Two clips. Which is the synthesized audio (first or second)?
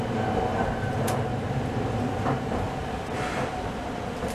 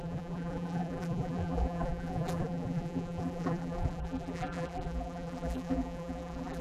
second